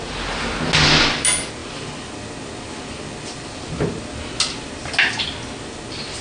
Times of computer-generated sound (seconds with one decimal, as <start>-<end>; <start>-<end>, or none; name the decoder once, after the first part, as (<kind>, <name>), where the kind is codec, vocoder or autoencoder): none